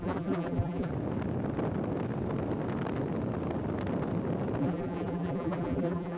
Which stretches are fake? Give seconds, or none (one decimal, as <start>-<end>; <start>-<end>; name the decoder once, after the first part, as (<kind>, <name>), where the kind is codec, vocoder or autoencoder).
0.0-0.9 (vocoder, BigVGAN v2); 4.6-6.2

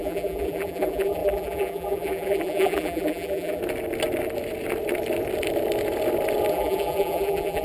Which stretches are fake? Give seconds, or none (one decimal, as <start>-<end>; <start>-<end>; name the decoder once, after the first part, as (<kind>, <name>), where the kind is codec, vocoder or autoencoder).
0.0-3.6 (vocoder, BigVGAN v2); 6.5-7.6

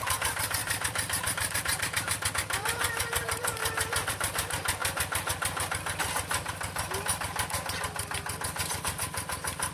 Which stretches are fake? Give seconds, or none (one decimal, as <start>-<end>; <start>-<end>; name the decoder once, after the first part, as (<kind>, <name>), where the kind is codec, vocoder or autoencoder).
0.0-3.6 (vocoder, BigVGAN v2); 4.1-4.8; 8.8-9.7

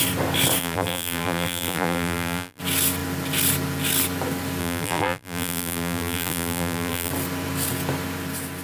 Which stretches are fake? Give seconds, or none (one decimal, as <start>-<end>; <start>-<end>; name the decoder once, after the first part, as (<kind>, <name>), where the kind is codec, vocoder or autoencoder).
0.6-2.6 (vocoder, BigVGAN v2); 4.6-7.1

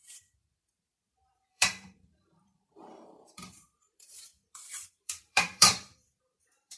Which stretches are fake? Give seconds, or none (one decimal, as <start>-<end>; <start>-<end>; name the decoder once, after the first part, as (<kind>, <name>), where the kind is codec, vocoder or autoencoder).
0.0-6.8 (vocoder, BigVGAN v2)